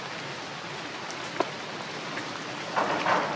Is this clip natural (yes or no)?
yes